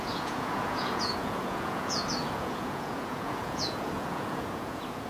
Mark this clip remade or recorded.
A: remade